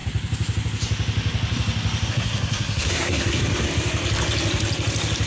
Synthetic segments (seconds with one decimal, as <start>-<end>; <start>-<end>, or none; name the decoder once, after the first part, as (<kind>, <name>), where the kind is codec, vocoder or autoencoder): 2.1-3.4 (codec, SNAC)